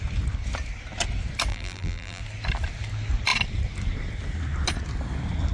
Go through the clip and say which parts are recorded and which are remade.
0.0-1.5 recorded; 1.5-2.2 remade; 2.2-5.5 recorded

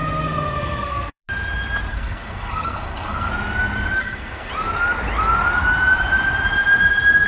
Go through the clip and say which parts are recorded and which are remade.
0.0-1.2 remade; 1.2-1.9 recorded; 1.9-3.3 remade; 3.3-4.0 recorded; 4.0-4.5 remade; 4.5-7.3 recorded